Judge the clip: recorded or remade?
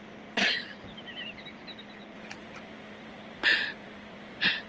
recorded